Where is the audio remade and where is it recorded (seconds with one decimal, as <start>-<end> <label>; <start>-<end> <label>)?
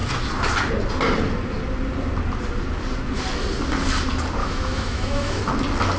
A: 0.0-4.4 recorded; 4.4-5.4 remade; 5.4-6.0 recorded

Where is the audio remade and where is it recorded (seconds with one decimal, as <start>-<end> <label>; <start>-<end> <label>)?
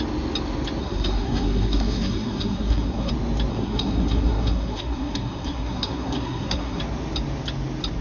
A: 0.0-0.8 recorded; 0.8-3.1 remade; 3.1-3.5 recorded; 3.5-6.8 remade; 6.8-8.0 recorded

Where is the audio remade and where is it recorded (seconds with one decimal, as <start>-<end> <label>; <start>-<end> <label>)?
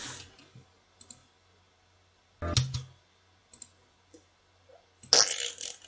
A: 0.0-5.9 recorded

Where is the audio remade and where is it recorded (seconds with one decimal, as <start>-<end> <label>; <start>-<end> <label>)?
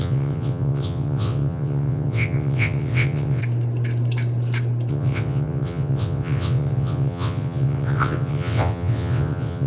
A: 0.0-3.4 remade; 3.4-4.9 recorded; 4.9-9.7 remade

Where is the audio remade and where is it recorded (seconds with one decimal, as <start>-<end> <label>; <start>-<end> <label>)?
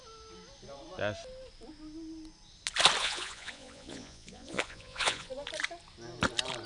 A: 0.0-3.0 recorded; 3.0-5.3 remade; 5.3-6.7 recorded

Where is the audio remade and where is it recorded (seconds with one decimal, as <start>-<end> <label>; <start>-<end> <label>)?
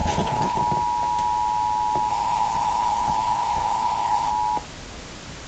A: 0.0-0.6 remade; 0.6-2.1 recorded; 2.1-4.3 remade; 4.3-5.5 recorded